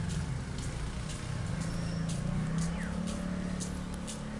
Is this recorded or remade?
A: recorded